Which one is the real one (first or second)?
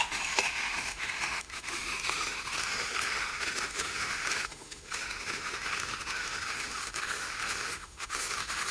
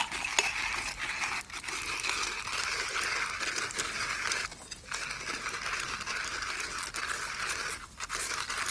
second